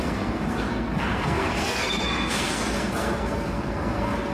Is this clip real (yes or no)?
no